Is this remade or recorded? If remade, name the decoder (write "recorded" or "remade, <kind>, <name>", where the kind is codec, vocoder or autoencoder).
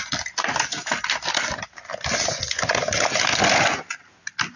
recorded